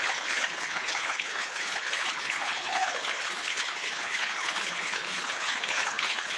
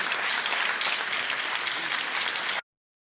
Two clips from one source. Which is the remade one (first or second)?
first